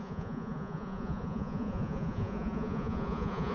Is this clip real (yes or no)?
no